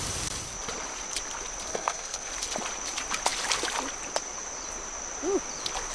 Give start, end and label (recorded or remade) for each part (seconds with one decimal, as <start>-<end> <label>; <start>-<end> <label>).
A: 0.0-1.7 recorded; 1.7-2.3 remade; 2.3-5.9 recorded